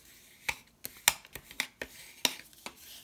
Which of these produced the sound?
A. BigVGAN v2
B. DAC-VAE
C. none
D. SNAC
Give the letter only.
C